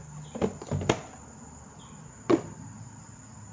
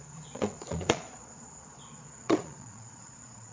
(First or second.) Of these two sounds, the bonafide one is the first